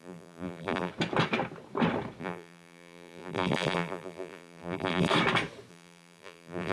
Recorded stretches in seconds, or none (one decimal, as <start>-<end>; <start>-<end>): 0.9-2.2; 5.1-5.7